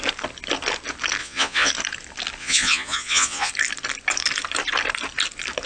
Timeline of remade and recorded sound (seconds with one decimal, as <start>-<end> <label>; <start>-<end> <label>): 0.0-1.2 recorded; 1.2-1.7 remade; 1.7-2.4 recorded; 2.4-3.5 remade; 3.5-5.7 recorded